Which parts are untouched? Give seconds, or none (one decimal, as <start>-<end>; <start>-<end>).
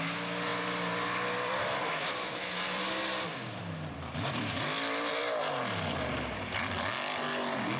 0.0-0.5; 5.2-7.8